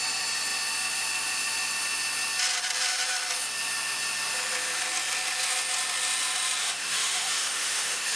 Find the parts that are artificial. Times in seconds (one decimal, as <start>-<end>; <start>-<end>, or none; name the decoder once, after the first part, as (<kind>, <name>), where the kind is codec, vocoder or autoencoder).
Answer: 6.6-8.2 (autoencoder, DAC-VAE)

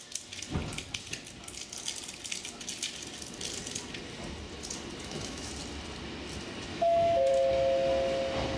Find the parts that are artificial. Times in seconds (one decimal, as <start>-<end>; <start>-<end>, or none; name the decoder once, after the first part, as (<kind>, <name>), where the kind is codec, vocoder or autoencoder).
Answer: 5.0-5.5 (autoencoder, DAC-VAE); 6.7-7.3

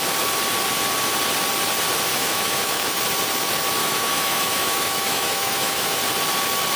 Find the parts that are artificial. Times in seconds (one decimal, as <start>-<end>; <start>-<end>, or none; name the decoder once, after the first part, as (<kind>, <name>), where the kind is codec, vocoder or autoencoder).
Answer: 2.1-3.0 (autoencoder, DAC-VAE); 3.8-6.0

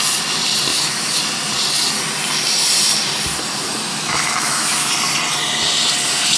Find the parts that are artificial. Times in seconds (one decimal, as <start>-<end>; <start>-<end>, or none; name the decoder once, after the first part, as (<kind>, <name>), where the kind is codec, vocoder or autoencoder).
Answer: 0.7-1.2 (autoencoder, DAC-VAE); 3.9-4.9

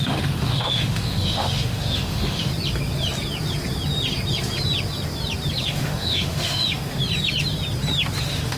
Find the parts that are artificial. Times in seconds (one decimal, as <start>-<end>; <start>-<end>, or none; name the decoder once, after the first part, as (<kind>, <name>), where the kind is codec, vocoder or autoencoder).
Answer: 0.0-2.5 (autoencoder, DAC-VAE); 5.6-7.0; 8.2-8.6